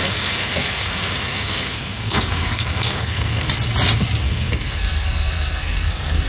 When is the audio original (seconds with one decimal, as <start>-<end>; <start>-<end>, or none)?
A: 3.5-4.2